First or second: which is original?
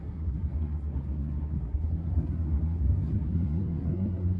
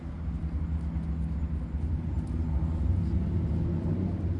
second